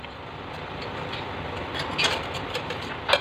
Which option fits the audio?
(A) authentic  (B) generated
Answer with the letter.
A